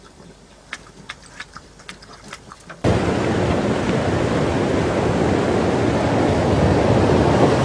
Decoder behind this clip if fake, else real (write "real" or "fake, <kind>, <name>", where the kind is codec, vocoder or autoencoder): real